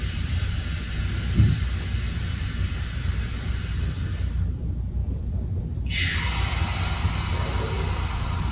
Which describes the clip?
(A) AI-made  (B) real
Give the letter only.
B